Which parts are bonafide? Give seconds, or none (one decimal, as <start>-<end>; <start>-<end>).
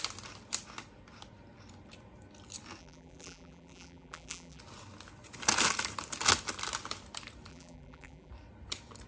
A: 0.0-2.8; 4.6-7.5; 8.3-9.1